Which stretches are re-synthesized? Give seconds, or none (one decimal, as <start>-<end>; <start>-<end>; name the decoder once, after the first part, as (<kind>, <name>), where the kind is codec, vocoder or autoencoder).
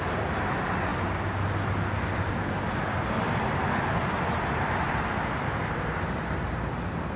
none